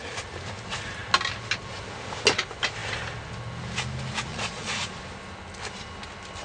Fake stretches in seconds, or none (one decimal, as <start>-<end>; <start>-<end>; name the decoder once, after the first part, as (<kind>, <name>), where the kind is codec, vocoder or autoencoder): 4.3-5.0 (vocoder, Vocos)